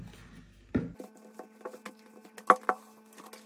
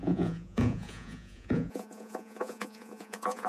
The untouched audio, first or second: first